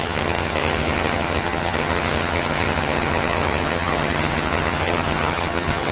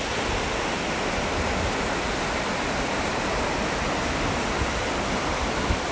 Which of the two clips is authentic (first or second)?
second